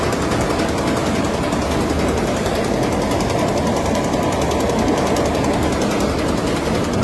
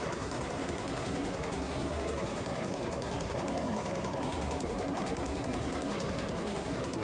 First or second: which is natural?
first